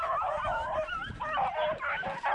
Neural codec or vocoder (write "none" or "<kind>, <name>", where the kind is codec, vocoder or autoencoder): none